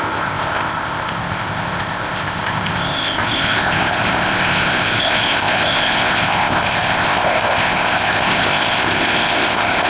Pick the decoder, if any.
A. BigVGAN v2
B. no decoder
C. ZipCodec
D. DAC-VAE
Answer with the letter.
C